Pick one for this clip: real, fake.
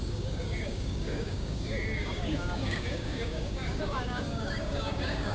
fake